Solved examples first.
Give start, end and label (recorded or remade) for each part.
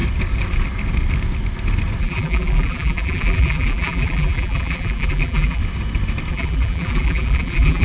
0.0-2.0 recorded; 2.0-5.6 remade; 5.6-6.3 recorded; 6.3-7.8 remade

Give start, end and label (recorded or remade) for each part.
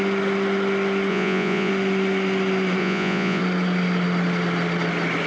0.0-1.1 recorded; 1.1-1.7 remade; 1.7-2.8 recorded; 2.8-3.4 remade; 3.4-5.3 recorded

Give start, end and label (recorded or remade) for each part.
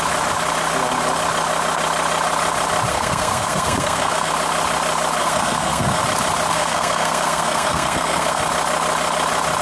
0.0-2.9 recorded; 2.9-4.3 remade; 4.3-5.2 recorded; 5.2-6.0 remade; 6.0-6.5 recorded; 6.5-8.4 remade; 8.4-9.6 recorded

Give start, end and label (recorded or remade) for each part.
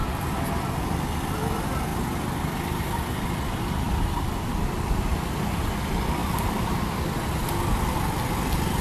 0.0-8.8 recorded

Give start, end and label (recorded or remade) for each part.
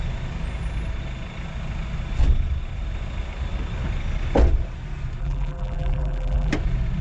0.0-5.2 recorded; 5.2-6.5 remade; 6.5-7.0 recorded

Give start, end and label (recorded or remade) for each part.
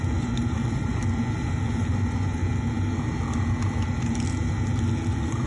0.0-1.0 remade; 1.0-1.9 recorded; 1.9-2.4 remade; 2.4-5.1 recorded; 5.1-5.5 remade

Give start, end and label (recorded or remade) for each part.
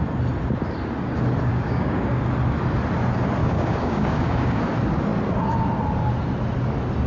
0.0-1.5 recorded; 1.5-2.2 remade; 2.2-3.4 recorded; 3.4-4.6 remade; 4.6-7.1 recorded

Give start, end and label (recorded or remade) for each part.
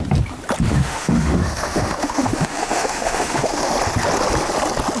0.0-0.7 recorded; 0.7-3.7 remade; 3.7-5.0 recorded